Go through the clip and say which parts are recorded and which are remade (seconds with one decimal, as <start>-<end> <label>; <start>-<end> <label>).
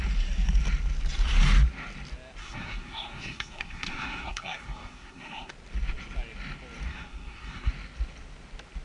0.0-2.4 recorded; 2.4-5.5 remade; 5.5-6.9 recorded; 6.9-7.7 remade; 7.7-8.8 recorded